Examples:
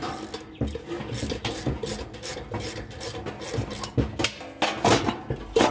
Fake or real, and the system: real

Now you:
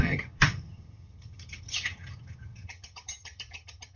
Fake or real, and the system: fake, vocoder, HiFi-GAN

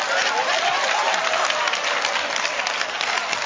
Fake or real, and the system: real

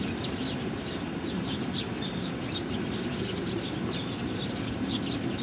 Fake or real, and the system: real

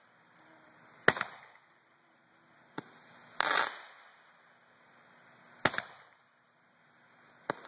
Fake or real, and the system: real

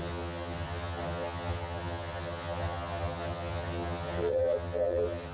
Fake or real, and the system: fake, vocoder, HiFi-GAN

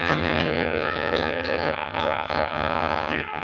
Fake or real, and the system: fake, vocoder, HiFi-GAN